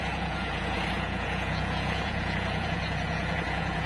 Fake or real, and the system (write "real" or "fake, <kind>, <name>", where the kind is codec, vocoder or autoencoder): fake, vocoder, Vocos